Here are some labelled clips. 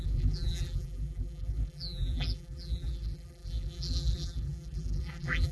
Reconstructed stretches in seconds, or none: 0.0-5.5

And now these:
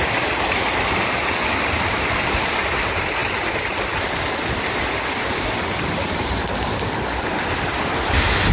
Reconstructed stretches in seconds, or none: none

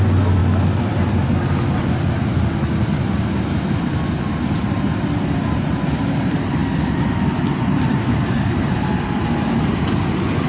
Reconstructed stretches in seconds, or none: none

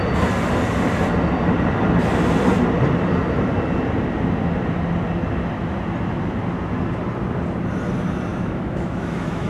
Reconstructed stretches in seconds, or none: 8.3-9.5

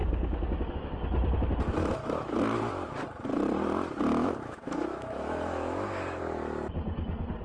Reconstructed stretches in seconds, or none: 1.8-2.4; 4.1-6.2

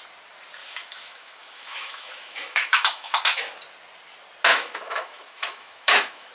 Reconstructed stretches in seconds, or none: 0.6-3.4; 4.5-6.3